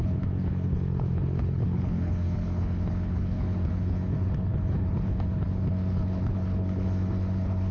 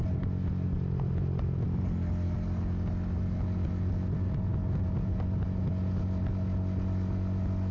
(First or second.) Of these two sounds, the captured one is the second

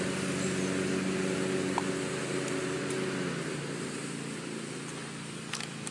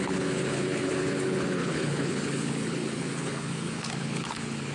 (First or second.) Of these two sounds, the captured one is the first